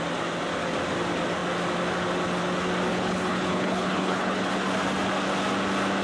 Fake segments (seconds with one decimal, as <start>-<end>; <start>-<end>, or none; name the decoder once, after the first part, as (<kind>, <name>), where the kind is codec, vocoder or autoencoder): 2.9-4.5 (codec, HILCodec)